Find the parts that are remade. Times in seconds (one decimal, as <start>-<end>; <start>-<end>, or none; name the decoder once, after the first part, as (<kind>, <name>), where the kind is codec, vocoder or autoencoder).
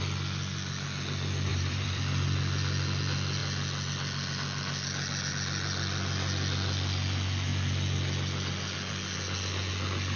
1.5-2.0 (vocoder, BigVGAN v2)